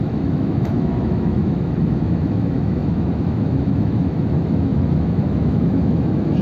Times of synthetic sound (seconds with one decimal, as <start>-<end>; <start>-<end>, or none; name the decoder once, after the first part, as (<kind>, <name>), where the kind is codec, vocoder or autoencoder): 0.0-6.4 (autoencoder, DAC-VAE)

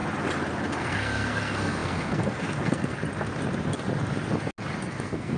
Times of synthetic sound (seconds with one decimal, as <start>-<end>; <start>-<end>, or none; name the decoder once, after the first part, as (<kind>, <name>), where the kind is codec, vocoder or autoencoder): 0.8-3.0 (codec, SNAC); 4.8-5.4

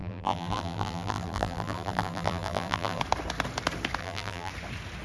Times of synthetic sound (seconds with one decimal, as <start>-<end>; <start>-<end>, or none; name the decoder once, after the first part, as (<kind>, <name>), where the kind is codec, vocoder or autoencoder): 0.0-3.0 (vocoder, BigVGAN v2); 4.0-4.5

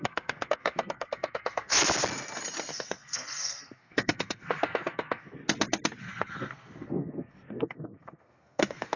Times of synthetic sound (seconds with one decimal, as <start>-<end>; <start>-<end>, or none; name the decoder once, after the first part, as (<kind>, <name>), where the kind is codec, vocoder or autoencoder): 0.0-1.7 (codec, SNAC); 2.7-5.4; 6.0-9.0